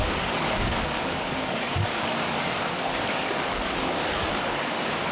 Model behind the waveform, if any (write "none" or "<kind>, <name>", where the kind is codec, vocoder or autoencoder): codec, DAC